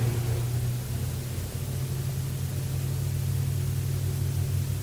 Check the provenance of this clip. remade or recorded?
recorded